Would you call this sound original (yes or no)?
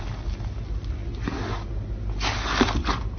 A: yes